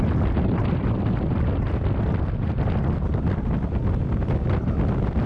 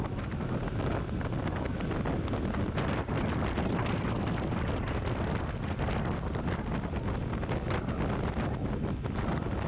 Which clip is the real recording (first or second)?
second